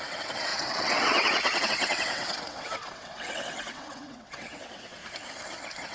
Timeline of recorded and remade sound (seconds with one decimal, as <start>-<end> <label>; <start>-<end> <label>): 0.0-5.0 remade; 5.0-5.9 recorded